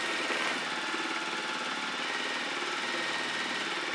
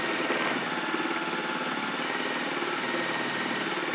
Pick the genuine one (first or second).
first